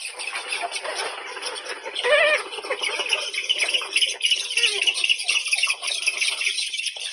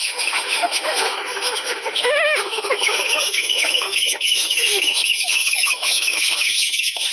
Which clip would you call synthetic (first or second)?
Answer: second